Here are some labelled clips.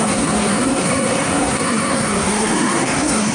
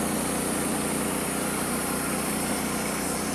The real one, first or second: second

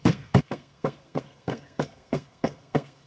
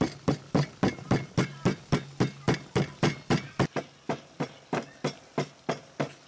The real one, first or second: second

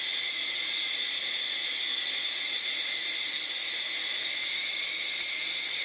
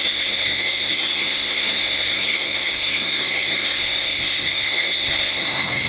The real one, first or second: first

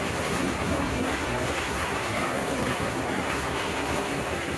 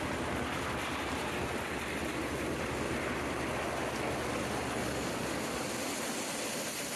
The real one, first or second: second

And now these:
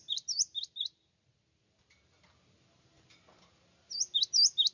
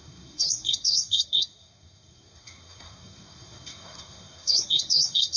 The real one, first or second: first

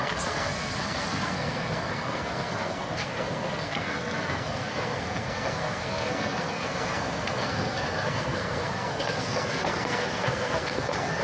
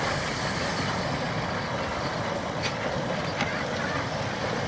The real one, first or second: second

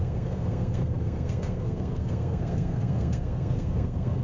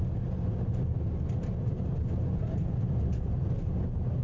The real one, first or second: second